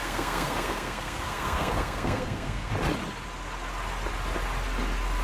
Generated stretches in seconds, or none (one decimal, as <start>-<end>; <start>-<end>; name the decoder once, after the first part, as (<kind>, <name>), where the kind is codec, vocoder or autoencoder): 0.0-2.7 (codec, SNAC)